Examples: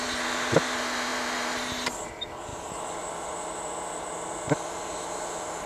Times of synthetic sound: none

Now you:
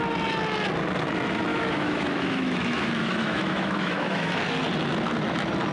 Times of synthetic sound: 1.5-4.3 (autoencoder, DAC-VAE)

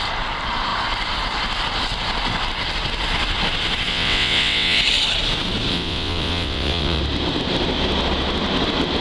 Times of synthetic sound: 3.9-4.8 (vocoder, WaveNeXt); 5.7-7.0

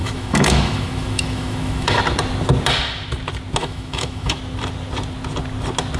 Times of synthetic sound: 0.0-2.0 (autoencoder, DAC-VAE); 3.6-4.4

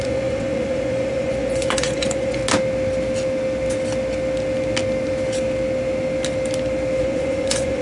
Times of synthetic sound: 0.0-2.4 (vocoder, Vocos); 7.0-7.8

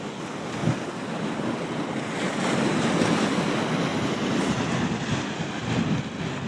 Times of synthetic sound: none

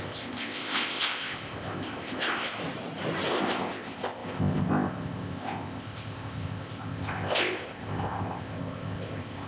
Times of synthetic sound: 0.0-2.6 (codec, ZipCodec); 3.3-9.5